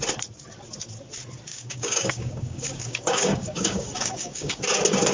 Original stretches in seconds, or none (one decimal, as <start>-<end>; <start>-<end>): 0.0-1.5; 4.6-5.1